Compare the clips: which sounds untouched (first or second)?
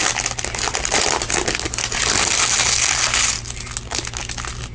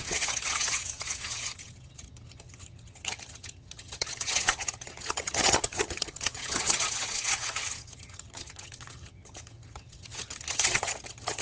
first